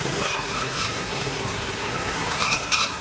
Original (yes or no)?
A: no